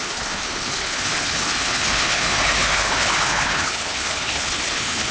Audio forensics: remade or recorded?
remade